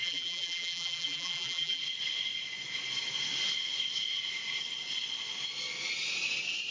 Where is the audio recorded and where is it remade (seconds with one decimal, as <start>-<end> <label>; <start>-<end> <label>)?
0.0-1.8 remade; 1.8-6.7 recorded